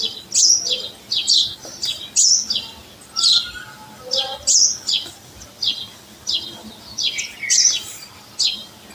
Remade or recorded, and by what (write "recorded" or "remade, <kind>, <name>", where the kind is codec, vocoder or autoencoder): recorded